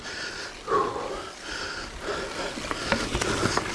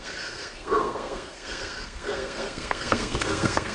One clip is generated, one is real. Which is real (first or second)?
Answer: first